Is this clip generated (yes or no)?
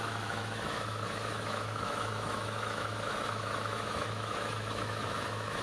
yes